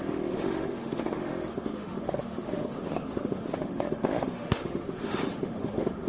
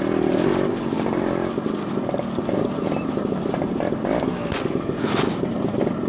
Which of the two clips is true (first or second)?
second